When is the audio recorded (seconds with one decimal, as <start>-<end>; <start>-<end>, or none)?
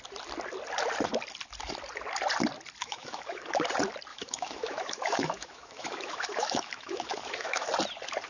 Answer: 0.0-2.8; 3.5-4.1; 7.7-8.3